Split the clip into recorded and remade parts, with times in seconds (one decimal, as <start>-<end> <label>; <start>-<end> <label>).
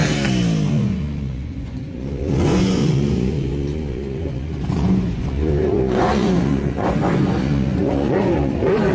0.0-0.7 recorded; 0.7-8.9 remade